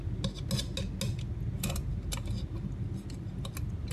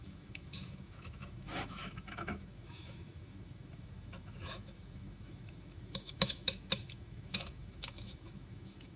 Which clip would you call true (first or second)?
first